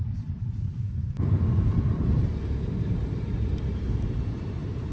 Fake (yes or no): yes